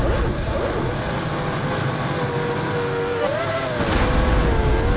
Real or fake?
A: real